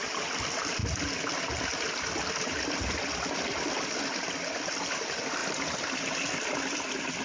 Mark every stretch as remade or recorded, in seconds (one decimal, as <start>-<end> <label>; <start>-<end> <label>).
0.0-7.2 recorded